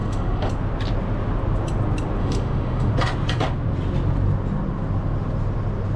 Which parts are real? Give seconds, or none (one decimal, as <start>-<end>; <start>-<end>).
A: 0.5-2.2; 2.9-6.0